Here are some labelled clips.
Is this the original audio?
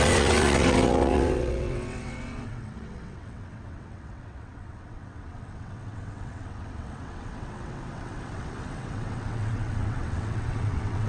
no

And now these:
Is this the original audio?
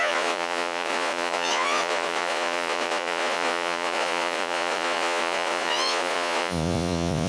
no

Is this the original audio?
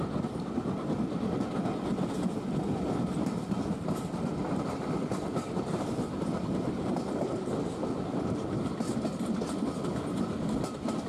yes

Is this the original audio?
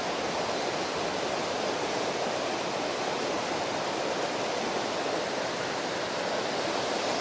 yes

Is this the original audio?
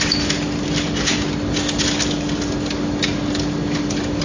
yes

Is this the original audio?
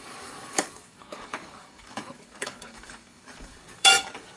no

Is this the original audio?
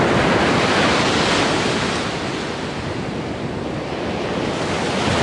yes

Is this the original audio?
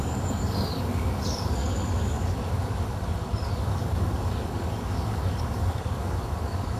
no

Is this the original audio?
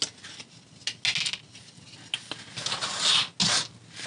yes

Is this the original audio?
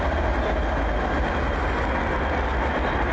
yes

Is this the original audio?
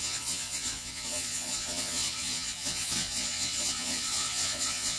no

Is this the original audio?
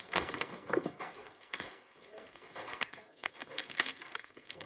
no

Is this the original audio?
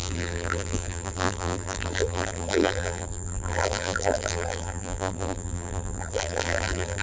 no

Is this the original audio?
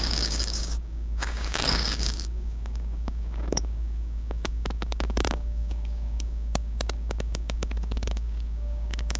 no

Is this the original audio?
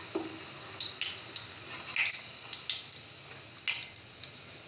yes